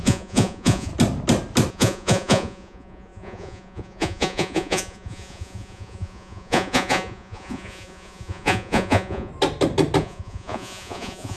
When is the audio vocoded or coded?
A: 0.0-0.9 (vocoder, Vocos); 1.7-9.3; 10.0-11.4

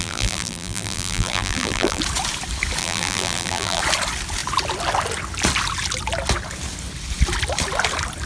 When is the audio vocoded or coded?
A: 0.0-2.0 (vocoder, BigVGAN v2); 2.8-3.8

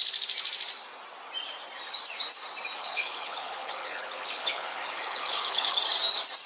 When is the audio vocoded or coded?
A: 2.8-5.8 (codec, HILCodec)

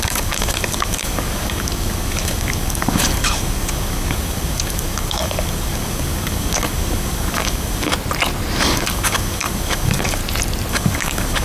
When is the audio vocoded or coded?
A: 0.0-7.9 (codec, DAC); 8.6-10.2; 10.7-11.4

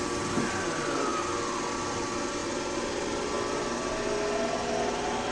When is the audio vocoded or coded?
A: none

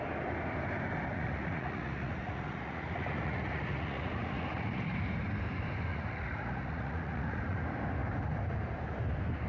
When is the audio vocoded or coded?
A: 1.1-4.9 (vocoder, Vocos); 5.9-7.6